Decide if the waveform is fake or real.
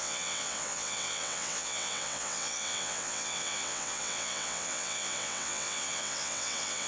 fake